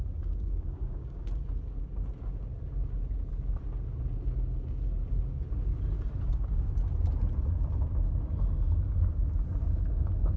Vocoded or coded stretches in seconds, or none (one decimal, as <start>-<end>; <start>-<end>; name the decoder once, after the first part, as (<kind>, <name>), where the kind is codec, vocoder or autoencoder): 0.0-1.3 (codec, DAC)